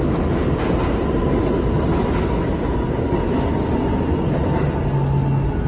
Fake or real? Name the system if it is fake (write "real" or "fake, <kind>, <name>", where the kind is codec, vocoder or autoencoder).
real